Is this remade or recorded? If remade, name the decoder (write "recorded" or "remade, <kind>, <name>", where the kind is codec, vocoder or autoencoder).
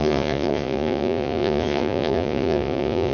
remade, vocoder, Vocos